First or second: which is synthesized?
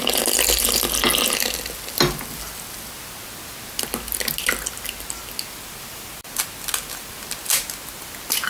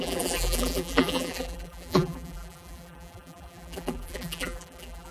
second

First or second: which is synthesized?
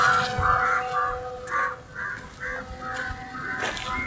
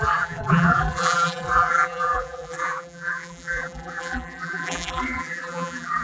second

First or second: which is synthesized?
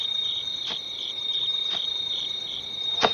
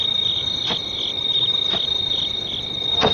first